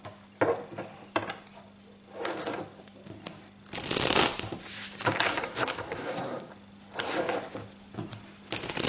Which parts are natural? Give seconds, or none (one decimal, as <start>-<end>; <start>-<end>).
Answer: 0.0-5.3; 6.5-8.9